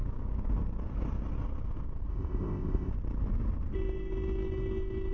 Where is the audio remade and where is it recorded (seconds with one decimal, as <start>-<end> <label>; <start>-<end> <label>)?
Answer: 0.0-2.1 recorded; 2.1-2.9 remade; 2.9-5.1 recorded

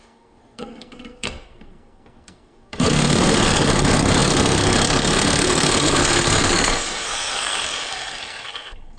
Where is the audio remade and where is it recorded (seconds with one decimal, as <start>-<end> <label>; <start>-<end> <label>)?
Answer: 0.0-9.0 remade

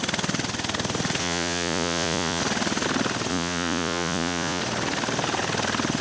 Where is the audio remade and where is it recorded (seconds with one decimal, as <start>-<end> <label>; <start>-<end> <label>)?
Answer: 0.0-1.2 recorded; 1.2-2.4 remade; 2.4-3.3 recorded; 3.3-4.6 remade; 4.6-6.0 recorded